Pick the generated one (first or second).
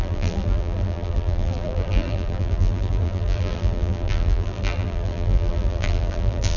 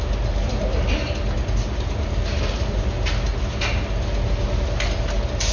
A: first